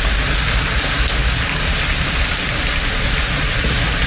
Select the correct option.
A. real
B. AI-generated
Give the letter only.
A